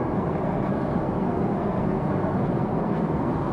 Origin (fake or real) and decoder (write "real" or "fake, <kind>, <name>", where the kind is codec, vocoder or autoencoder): fake, codec, SNAC